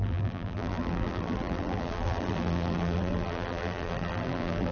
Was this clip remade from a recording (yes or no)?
yes